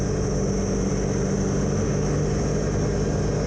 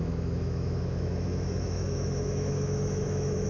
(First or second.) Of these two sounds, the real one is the first